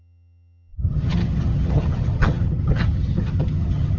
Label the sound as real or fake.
fake